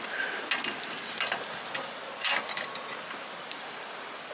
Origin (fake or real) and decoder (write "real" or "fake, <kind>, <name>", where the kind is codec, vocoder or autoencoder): real